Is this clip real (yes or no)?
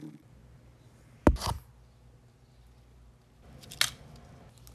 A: yes